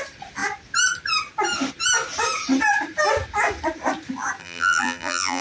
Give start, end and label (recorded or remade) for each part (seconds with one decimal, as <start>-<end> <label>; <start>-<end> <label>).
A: 0.0-4.4 recorded; 4.4-5.4 remade